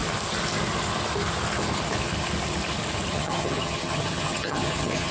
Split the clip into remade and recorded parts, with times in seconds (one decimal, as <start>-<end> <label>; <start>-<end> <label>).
0.0-3.1 recorded; 3.1-5.1 remade